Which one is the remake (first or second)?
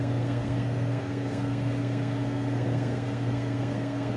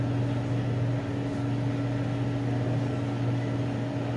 first